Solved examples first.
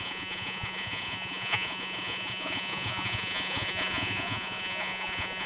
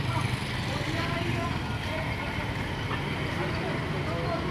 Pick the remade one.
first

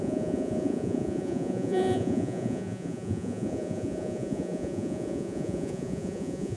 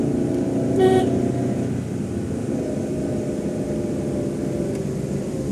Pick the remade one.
first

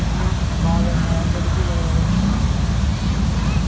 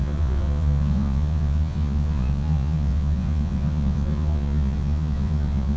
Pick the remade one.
second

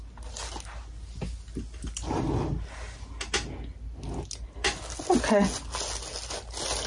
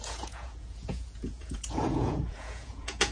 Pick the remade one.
second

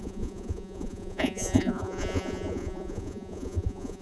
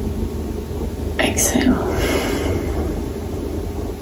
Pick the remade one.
first